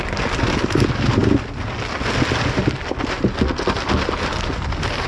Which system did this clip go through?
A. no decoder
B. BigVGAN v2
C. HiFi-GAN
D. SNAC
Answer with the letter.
A